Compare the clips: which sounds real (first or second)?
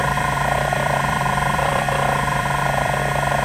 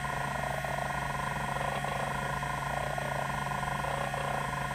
second